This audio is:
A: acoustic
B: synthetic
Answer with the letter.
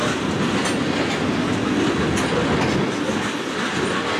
A